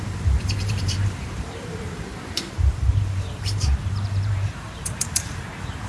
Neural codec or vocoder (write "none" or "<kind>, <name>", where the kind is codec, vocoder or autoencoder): vocoder, BigVGAN v2